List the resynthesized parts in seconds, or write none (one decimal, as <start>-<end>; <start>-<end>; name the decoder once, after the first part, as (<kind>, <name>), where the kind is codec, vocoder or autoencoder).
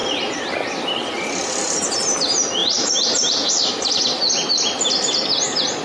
2.6-3.5 (vocoder, BigVGAN v2)